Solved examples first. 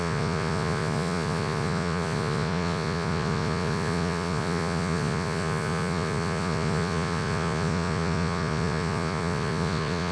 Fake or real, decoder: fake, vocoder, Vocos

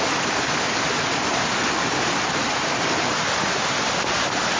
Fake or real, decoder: real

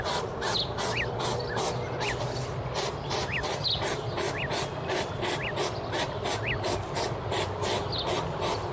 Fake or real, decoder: real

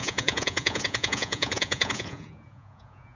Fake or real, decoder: fake, vocoder, Vocos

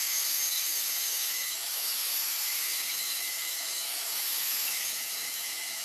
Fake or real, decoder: fake, autoencoder, DAC-VAE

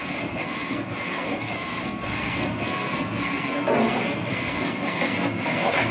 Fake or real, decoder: fake, codec, SNAC